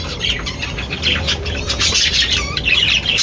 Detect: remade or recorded recorded